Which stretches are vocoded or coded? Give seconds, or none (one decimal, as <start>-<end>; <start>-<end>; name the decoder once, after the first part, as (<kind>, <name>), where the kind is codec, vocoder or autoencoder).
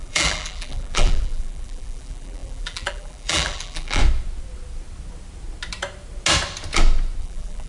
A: 0.0-4.0 (vocoder, BigVGAN v2); 7.2-7.7